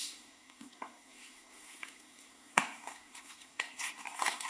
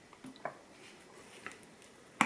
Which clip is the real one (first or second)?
second